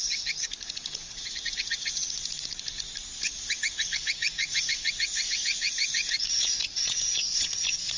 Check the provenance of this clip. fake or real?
fake